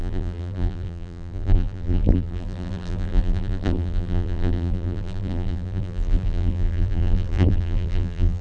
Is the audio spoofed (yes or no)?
yes